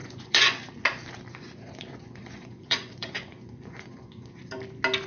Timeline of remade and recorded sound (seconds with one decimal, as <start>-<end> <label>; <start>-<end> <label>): 0.0-0.7 remade; 0.7-1.3 recorded; 1.3-4.4 remade; 4.4-5.1 recorded